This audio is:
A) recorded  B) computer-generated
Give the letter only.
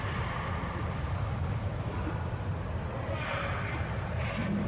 A